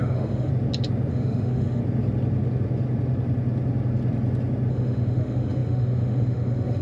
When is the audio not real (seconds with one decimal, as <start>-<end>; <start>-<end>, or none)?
0.0-0.5; 1.1-1.8; 4.7-6.8